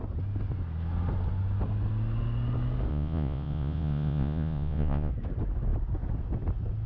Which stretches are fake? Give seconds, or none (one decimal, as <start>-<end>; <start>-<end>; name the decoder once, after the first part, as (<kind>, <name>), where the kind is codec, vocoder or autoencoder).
2.9-5.1 (vocoder, Vocos)